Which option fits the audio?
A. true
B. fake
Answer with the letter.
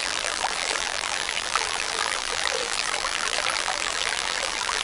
B